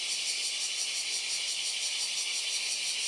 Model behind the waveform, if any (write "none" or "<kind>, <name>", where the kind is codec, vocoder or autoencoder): none